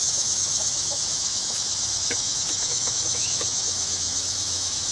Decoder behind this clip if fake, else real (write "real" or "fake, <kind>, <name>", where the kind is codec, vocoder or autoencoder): fake, autoencoder, DAC-VAE